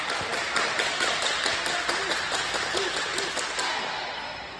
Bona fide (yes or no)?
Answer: yes